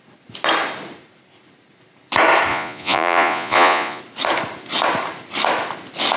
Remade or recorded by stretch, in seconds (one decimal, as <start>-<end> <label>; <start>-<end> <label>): 0.0-2.5 recorded; 2.5-4.0 remade; 4.0-6.2 recorded